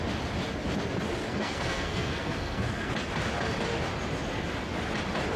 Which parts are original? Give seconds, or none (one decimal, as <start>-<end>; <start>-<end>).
0.0-1.2; 2.9-5.4